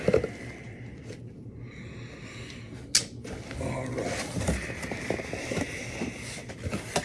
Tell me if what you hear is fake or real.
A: real